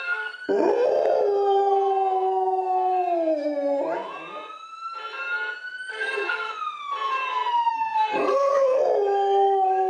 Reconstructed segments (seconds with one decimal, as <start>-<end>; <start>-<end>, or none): 0.0-0.7; 5.9-6.5; 7.7-8.8